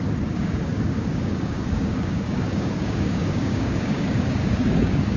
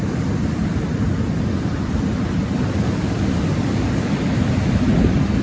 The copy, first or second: first